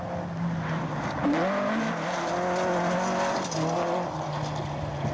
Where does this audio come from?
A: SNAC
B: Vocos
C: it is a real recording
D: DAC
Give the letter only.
C